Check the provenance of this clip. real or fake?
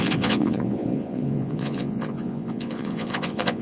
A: fake